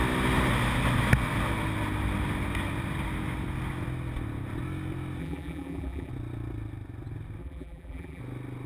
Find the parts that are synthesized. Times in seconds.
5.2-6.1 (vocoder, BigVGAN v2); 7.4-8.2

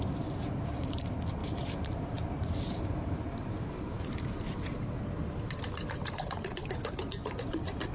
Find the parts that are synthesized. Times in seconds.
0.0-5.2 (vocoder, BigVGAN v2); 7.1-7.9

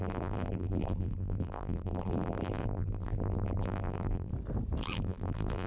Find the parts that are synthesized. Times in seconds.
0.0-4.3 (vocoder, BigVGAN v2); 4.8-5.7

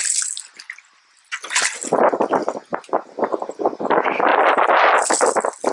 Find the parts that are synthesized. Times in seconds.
2.7-3.9 (vocoder, BigVGAN v2)

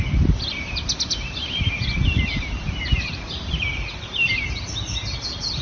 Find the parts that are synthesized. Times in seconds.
none

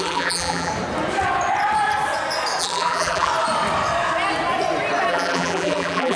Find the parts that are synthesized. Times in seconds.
0.0-0.7 (vocoder, BigVGAN v2); 2.6-3.3; 5.1-6.2